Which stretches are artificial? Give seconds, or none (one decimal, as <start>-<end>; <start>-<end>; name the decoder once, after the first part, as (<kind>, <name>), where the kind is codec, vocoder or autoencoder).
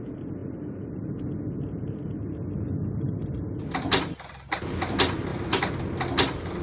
none